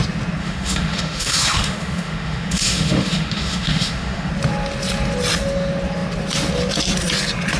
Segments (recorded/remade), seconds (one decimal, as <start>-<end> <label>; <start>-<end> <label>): 0.0-0.4 recorded; 0.4-4.3 remade; 4.3-7.6 recorded